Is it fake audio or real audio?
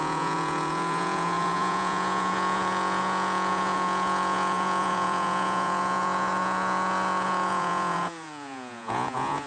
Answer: fake